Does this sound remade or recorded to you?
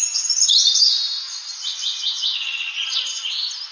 recorded